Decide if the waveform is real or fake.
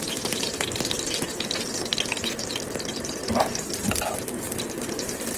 real